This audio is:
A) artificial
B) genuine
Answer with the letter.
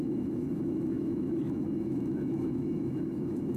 A